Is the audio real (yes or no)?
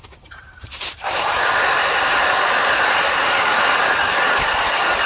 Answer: no